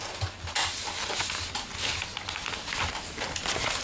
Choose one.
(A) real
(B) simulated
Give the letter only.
A